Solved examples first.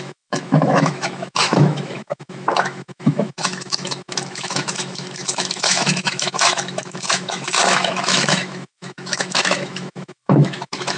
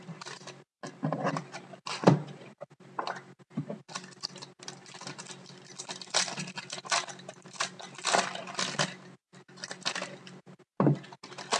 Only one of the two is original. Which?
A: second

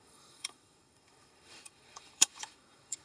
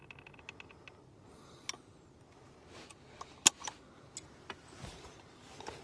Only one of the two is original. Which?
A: second